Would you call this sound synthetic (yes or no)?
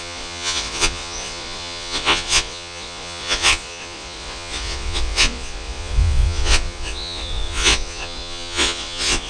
yes